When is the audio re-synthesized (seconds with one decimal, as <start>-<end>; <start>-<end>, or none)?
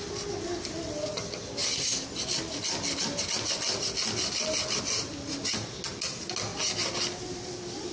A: none